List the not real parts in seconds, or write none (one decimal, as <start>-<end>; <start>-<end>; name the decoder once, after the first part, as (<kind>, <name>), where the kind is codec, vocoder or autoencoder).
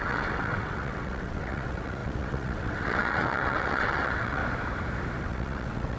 0.0-4.4 (vocoder, WaveNeXt); 5.2-6.0